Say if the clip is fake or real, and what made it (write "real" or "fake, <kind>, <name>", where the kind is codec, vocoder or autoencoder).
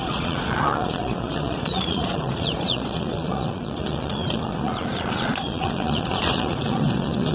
fake, vocoder, Vocos